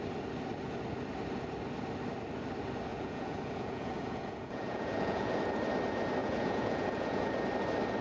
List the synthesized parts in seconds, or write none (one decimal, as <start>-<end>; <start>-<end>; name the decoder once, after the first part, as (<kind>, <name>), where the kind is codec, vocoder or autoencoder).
2.9-5.4 (vocoder, Vocos); 6.2-7.3